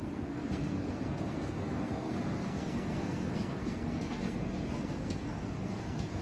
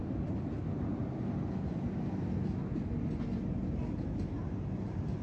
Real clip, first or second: second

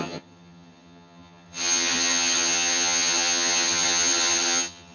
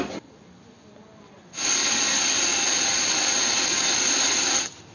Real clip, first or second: second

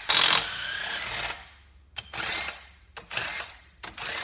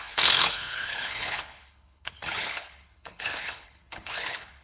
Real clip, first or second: first